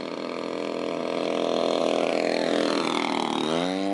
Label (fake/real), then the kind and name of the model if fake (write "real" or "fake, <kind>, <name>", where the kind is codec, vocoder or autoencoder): real